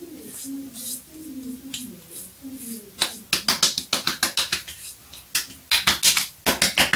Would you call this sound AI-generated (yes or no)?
no